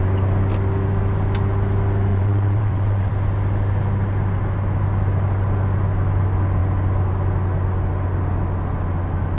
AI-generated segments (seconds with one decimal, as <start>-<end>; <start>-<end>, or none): 2.1-3.1